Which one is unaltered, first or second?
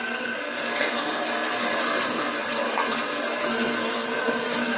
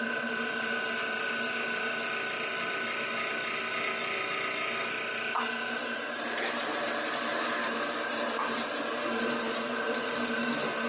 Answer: second